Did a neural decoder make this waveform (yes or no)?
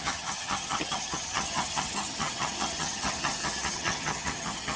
yes